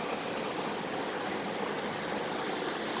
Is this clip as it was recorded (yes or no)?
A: yes